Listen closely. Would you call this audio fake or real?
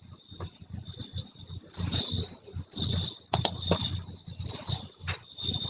real